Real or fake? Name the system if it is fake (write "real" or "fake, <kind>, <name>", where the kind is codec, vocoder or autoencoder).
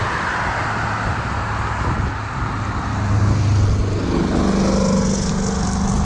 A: real